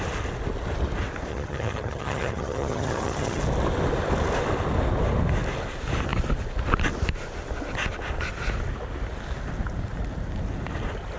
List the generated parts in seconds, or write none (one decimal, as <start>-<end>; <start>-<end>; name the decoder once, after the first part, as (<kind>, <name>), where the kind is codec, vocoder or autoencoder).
1.3-3.4 (vocoder, HiFi-GAN)